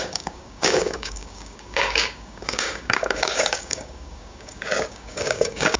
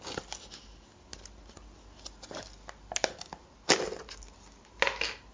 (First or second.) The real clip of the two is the second